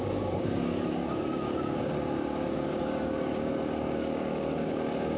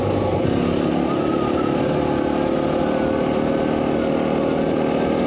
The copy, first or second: first